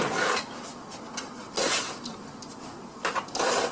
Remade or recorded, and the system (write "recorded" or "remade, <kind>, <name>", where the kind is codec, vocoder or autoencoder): recorded